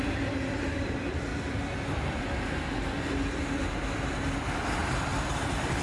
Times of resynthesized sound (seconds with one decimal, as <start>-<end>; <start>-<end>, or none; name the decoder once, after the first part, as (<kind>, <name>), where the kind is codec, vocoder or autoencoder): 4.8-5.3 (vocoder, BigVGAN v2)